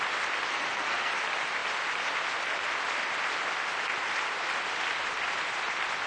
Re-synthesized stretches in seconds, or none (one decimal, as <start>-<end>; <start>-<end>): 0.5-1.2